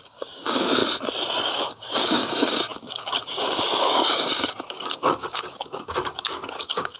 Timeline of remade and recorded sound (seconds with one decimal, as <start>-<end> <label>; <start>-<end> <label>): 0.0-0.8 remade; 0.8-1.5 recorded; 1.5-7.0 remade